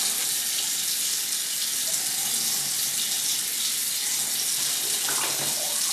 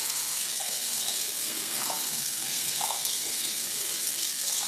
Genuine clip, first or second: first